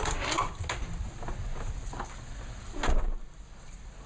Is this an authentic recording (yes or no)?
yes